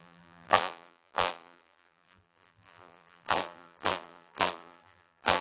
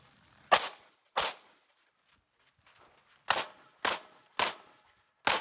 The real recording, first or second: second